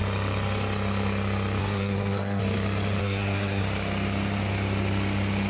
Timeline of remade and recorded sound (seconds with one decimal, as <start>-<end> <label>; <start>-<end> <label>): 0.0-1.6 recorded; 1.6-2.4 remade; 2.4-3.0 recorded; 3.0-3.6 remade; 3.6-5.5 recorded

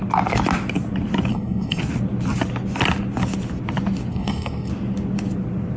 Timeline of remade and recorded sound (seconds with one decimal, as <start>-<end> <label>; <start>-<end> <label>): 0.0-1.3 recorded; 1.3-1.8 remade; 1.8-4.1 recorded; 4.1-4.7 remade; 4.7-5.8 recorded

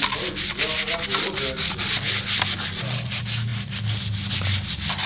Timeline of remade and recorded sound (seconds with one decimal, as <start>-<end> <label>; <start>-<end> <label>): 0.0-5.1 recorded

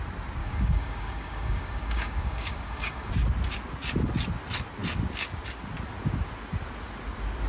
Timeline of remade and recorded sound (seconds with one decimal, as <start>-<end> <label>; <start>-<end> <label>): 0.0-0.4 recorded; 0.4-3.1 remade; 3.1-7.5 recorded

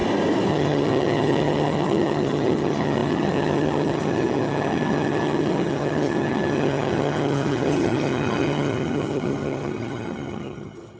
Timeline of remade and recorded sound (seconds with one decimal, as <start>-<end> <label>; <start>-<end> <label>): 0.0-0.5 recorded; 0.5-11.0 remade